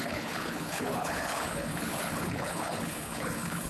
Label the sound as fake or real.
fake